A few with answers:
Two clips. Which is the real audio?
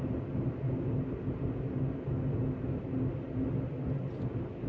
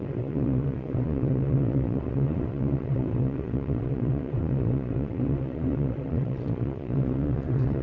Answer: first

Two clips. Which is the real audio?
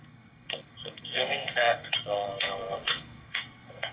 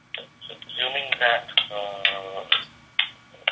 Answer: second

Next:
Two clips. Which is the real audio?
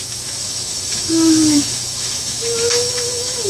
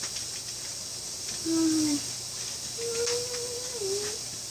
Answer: second